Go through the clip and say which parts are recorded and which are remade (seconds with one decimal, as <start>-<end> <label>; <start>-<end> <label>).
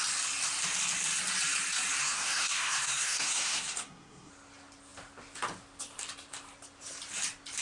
0.0-2.0 recorded; 2.0-4.3 remade; 4.3-7.6 recorded